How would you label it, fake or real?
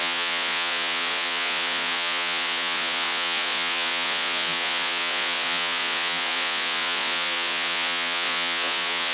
fake